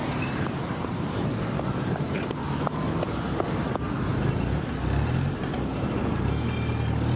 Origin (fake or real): real